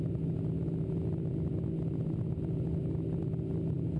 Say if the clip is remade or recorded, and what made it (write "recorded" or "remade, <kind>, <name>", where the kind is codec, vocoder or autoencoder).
recorded